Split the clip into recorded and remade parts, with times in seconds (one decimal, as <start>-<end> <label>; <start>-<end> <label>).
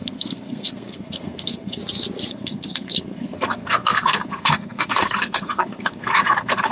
0.0-1.8 remade; 1.8-2.3 recorded; 2.3-6.7 remade